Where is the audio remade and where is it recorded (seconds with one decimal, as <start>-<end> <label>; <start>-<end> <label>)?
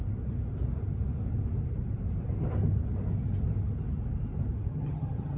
0.0-4.7 recorded; 4.7-5.4 remade